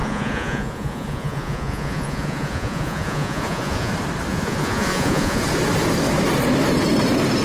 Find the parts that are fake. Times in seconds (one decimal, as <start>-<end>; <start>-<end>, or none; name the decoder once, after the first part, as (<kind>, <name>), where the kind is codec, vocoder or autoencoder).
0.0-3.9 (vocoder, Vocos); 4.3-5.4